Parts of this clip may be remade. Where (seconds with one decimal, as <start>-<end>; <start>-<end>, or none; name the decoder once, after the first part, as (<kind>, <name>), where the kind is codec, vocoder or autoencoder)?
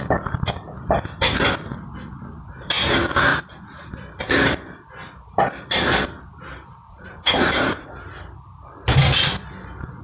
3.3-3.9 (vocoder, Vocos); 6.8-7.9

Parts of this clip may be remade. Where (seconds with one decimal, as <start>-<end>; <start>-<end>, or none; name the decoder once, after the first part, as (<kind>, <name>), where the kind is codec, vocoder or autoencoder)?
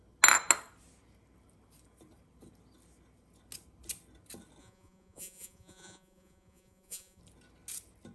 4.6-7.2 (vocoder, Vocos)